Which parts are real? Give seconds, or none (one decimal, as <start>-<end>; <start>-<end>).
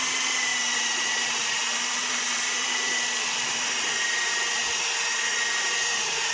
0.0-0.5; 4.3-5.3